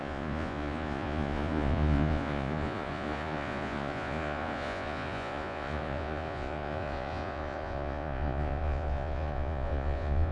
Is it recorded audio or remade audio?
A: remade